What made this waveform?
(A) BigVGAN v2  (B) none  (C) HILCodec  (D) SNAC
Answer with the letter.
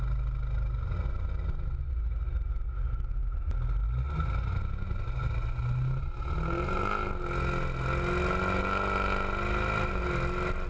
B